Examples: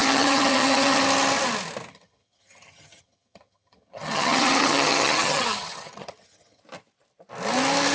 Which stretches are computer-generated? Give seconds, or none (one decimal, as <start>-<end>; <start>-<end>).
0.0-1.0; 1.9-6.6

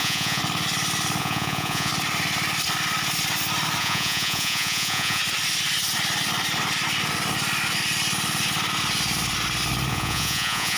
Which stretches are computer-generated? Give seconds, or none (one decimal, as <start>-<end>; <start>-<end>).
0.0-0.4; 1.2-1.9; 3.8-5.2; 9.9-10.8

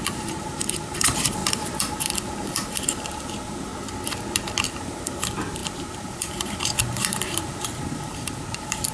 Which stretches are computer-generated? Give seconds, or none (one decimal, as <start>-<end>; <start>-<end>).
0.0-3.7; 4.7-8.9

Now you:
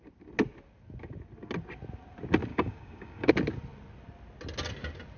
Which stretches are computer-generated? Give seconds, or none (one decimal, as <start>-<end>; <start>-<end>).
2.5-3.3